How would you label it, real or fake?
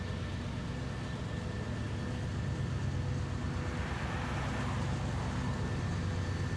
real